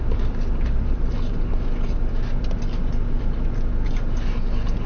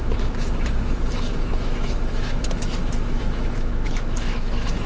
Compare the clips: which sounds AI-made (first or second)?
second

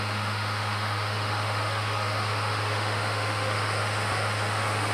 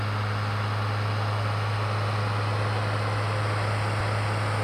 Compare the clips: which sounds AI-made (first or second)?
first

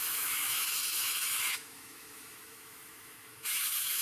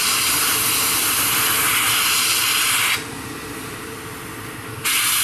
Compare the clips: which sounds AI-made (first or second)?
first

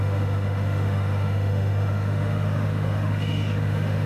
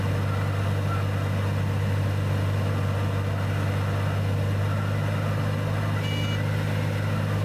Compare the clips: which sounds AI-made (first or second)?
first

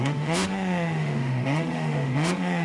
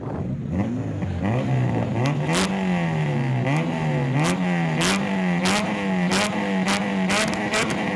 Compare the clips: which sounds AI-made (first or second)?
first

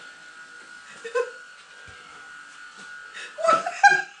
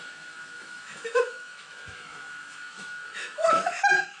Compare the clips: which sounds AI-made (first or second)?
second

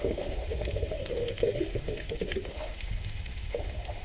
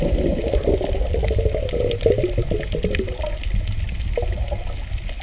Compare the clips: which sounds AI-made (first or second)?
first